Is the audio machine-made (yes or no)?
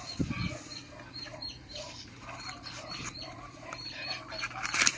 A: yes